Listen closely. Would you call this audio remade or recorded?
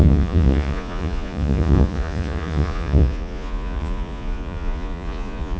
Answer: remade